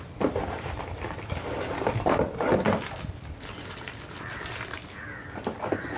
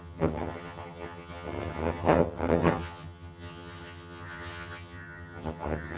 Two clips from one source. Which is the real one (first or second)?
first